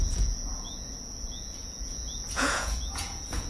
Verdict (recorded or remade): remade